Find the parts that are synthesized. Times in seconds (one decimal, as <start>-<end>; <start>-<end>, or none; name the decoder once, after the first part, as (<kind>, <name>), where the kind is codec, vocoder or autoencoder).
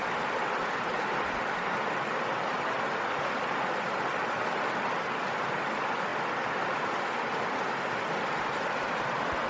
none